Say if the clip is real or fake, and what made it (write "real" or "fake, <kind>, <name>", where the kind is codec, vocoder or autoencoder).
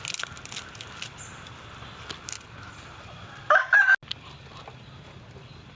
real